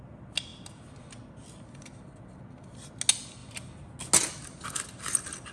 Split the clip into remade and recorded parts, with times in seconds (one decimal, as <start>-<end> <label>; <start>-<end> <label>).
0.0-5.5 recorded